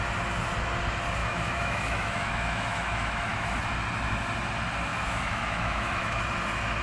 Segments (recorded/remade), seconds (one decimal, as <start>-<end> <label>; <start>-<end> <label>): 0.0-1.2 recorded; 1.2-3.6 remade; 3.6-4.9 recorded; 4.9-6.2 remade; 6.2-6.8 recorded